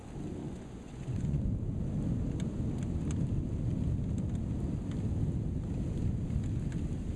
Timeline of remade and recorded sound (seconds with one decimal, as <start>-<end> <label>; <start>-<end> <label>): 0.0-0.4 recorded; 0.4-1.5 remade; 1.5-7.2 recorded